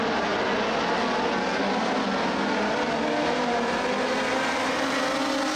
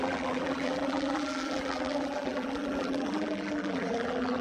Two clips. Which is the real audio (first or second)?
first